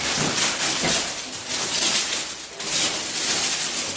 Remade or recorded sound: recorded